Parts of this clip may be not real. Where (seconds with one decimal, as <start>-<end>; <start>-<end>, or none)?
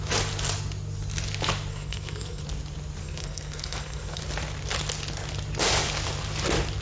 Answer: 1.7-2.4; 3.0-4.2